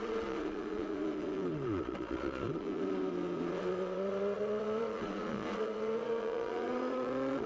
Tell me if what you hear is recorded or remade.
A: remade